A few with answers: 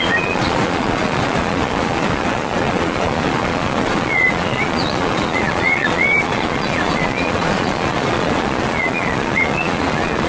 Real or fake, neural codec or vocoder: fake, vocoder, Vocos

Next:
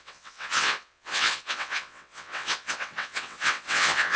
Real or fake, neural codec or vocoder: fake, vocoder, WaveNeXt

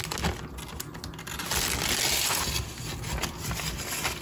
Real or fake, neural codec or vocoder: real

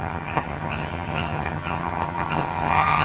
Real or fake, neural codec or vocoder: fake, vocoder, HiFi-GAN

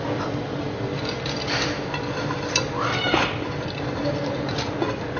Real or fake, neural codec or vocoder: real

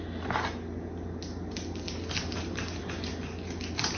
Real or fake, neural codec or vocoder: real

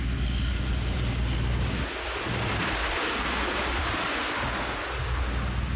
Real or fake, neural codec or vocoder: real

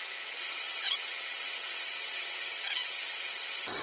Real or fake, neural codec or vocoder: fake, vocoder, WaveNeXt